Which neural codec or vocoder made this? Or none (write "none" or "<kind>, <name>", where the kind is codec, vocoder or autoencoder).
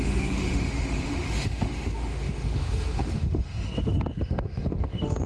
autoencoder, DAC-VAE